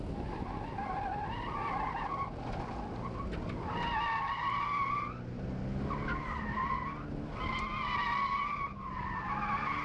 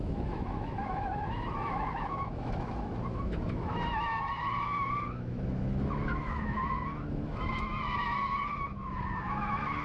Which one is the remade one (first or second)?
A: second